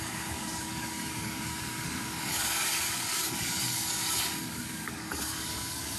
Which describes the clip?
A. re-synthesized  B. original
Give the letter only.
A